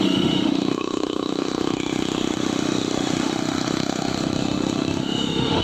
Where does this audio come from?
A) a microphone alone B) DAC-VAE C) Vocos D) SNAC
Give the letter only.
B